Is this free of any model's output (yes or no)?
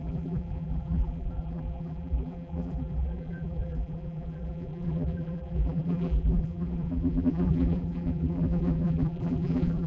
no